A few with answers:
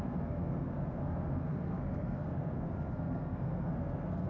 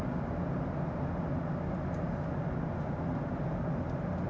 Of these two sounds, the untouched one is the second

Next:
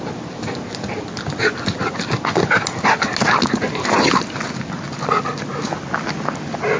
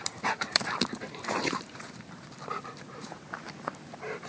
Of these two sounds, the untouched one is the first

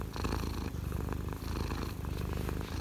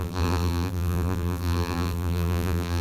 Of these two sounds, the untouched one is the first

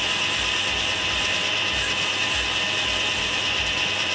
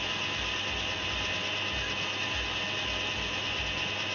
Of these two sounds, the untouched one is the second